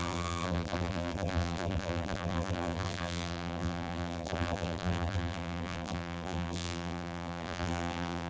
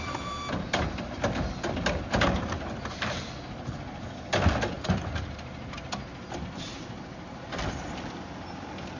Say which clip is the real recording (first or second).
second